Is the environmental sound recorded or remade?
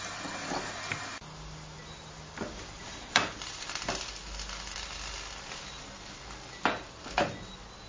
recorded